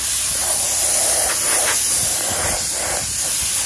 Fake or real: real